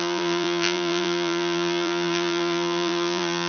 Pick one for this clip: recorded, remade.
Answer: remade